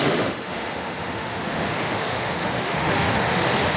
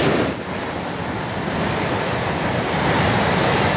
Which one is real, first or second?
second